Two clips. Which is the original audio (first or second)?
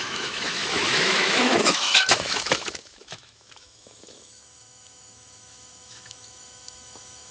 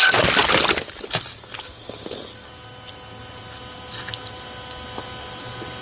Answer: second